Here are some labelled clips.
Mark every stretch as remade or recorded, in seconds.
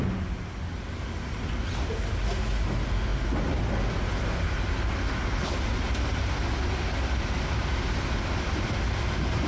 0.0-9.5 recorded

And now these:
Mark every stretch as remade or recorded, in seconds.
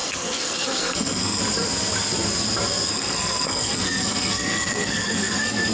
0.0-1.4 remade; 1.4-2.9 recorded; 2.9-5.7 remade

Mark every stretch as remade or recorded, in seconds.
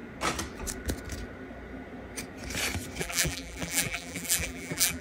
0.0-3.0 recorded; 3.0-5.0 remade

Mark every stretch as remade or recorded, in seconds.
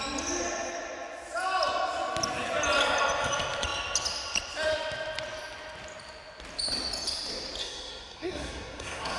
0.0-7.6 recorded; 7.6-9.2 remade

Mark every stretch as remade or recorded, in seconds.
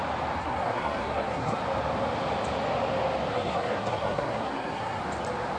0.0-0.4 recorded; 0.4-1.6 remade; 1.6-3.3 recorded; 3.3-5.0 remade; 5.0-5.6 recorded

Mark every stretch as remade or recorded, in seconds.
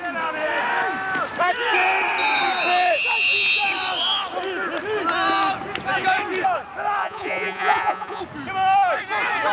0.0-7.0 recorded; 7.0-8.2 remade; 8.2-9.5 recorded